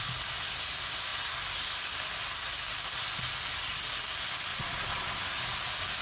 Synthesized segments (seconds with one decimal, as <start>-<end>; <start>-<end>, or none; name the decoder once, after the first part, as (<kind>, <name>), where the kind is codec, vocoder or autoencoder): 4.5-5.2 (vocoder, Vocos)